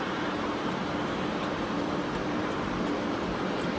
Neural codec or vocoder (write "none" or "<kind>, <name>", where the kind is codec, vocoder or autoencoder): vocoder, BigVGAN v2